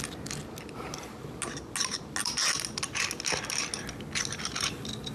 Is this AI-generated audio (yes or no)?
no